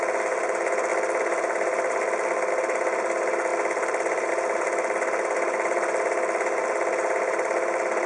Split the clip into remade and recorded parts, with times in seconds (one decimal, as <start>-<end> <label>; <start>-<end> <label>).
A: 0.0-8.1 recorded